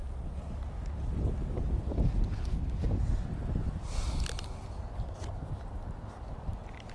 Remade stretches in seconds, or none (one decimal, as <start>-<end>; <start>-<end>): none